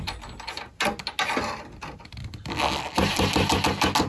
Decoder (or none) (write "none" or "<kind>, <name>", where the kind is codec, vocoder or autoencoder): none